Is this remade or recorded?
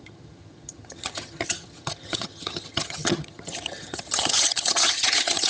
remade